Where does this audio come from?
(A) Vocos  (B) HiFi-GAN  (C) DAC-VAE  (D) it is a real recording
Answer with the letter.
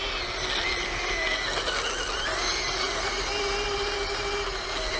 D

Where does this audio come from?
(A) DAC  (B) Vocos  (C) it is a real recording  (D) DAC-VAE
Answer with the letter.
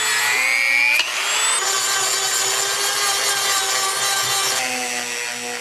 C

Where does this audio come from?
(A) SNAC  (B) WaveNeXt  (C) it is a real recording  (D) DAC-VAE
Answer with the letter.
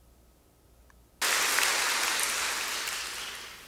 C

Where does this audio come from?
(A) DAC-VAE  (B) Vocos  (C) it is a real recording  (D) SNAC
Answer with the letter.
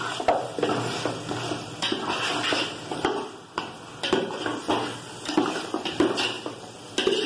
C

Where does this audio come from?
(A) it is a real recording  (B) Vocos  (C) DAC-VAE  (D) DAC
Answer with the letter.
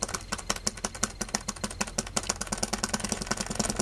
A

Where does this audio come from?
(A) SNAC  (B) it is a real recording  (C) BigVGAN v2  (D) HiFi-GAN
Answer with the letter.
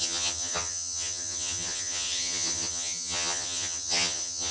D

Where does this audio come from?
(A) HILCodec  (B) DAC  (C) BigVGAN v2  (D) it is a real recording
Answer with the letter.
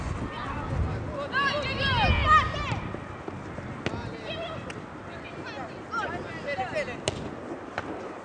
D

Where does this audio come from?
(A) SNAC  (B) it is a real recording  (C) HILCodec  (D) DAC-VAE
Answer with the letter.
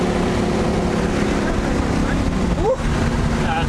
B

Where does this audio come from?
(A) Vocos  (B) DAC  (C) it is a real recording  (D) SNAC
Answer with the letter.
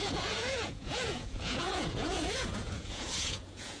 A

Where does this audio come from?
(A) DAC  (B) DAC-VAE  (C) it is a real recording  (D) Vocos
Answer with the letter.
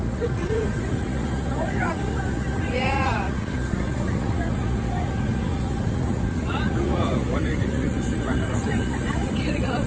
D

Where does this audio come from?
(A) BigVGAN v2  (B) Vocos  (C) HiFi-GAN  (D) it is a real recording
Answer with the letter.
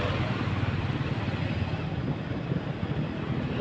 D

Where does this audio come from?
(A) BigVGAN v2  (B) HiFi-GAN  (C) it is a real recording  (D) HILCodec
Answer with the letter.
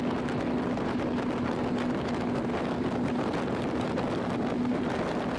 C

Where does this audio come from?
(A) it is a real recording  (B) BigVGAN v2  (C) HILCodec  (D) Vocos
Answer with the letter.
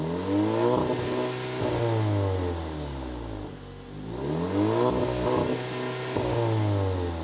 A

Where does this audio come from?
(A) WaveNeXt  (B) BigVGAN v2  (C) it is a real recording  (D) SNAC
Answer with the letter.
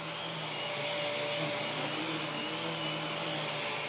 C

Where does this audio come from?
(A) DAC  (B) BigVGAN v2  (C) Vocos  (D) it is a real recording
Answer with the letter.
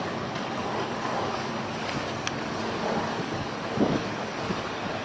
A